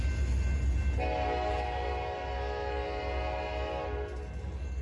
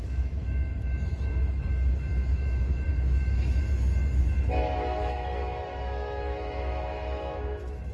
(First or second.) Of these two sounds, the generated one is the second